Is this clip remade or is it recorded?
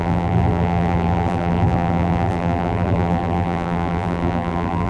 remade